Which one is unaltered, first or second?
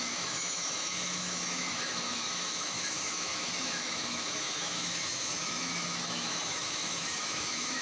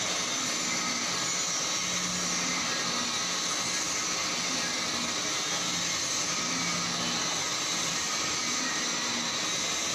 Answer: second